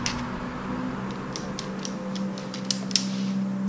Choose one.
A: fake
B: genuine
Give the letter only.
B